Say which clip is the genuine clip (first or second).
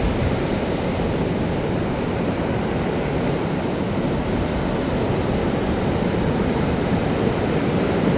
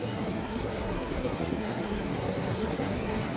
first